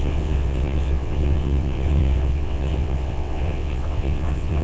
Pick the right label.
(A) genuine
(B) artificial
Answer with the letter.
B